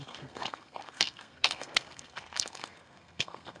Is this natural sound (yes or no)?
no